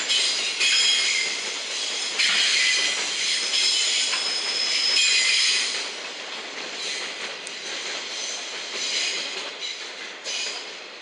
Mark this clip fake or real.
fake